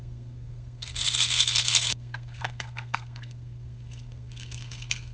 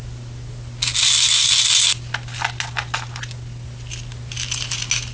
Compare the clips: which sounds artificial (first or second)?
first